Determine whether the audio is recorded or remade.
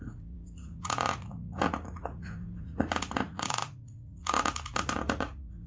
remade